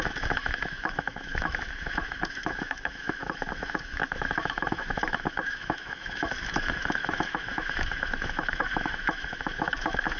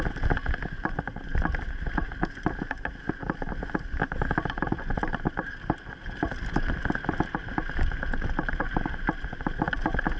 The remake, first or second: first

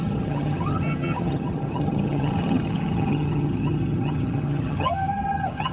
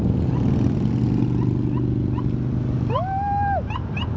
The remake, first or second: first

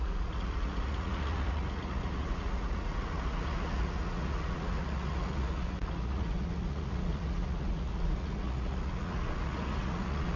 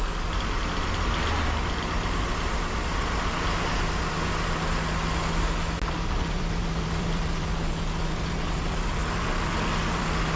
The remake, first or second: first